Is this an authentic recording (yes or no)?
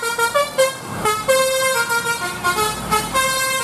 yes